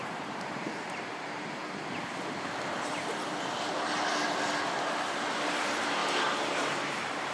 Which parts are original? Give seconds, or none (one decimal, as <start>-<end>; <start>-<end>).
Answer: 1.6-5.3; 6.0-6.6